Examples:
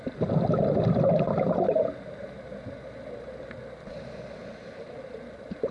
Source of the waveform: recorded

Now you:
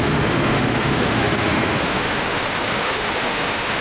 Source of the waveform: remade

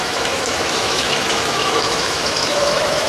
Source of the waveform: remade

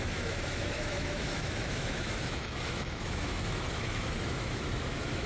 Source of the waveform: remade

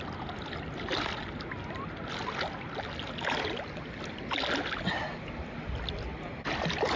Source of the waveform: recorded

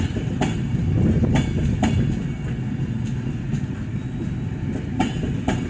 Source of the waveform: recorded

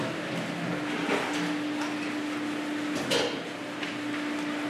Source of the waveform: recorded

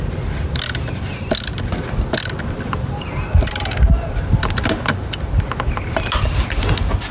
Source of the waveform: recorded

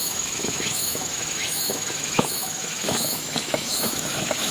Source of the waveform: remade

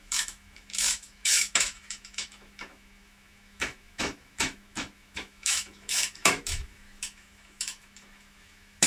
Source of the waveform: remade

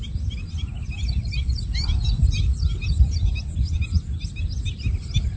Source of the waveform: recorded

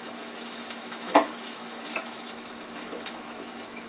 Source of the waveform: remade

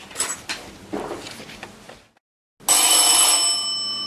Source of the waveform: recorded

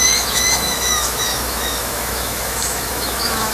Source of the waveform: remade